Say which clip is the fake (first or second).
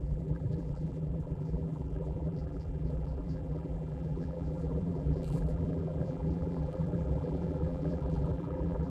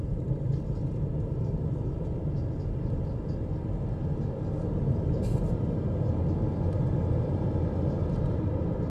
first